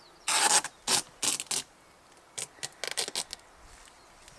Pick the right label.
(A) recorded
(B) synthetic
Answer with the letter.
A